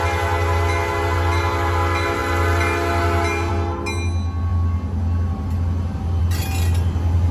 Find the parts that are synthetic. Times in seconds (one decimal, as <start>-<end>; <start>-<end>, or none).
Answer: none